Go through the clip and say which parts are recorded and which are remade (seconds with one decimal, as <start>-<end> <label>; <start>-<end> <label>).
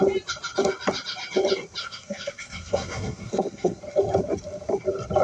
0.0-1.8 recorded; 1.8-3.8 remade; 3.8-5.2 recorded